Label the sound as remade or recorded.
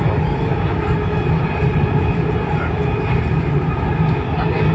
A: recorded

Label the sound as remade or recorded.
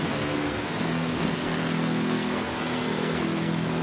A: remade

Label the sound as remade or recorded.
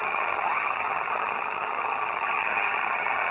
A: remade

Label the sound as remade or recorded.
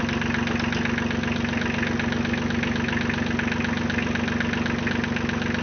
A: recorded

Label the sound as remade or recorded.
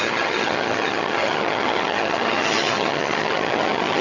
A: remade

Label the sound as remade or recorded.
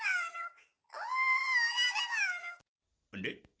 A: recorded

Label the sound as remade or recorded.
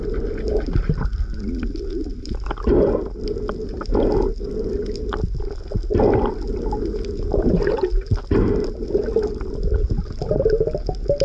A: recorded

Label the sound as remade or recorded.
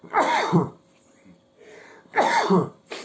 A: remade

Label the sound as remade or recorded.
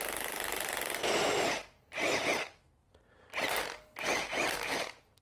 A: recorded